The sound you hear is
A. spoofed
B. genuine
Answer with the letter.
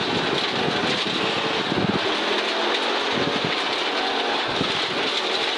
B